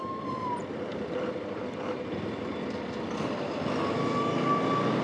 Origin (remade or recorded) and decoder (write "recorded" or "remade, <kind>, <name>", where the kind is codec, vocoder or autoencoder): recorded